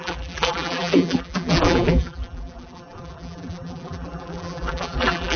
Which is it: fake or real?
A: fake